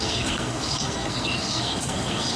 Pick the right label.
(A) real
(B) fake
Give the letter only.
B